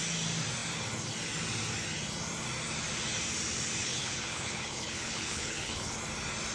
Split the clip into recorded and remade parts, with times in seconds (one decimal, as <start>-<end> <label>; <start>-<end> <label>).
0.0-3.8 recorded; 3.8-6.0 remade; 6.0-6.5 recorded